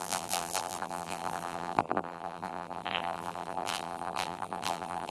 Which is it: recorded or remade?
remade